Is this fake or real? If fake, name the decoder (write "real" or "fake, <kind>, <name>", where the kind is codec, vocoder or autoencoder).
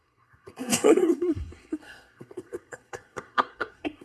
fake, codec, SNAC